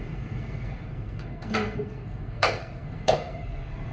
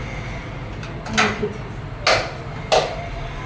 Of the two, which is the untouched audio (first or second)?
second